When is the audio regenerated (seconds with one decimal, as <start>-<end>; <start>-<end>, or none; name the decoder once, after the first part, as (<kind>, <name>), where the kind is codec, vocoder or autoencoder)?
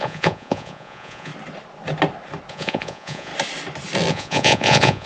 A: 0.0-1.3 (vocoder, Vocos); 2.5-3.3; 4.1-5.1